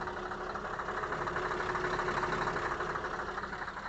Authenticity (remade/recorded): recorded